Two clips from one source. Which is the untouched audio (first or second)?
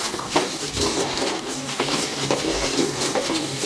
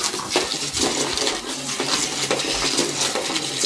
second